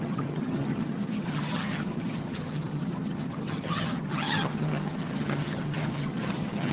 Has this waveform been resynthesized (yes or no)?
yes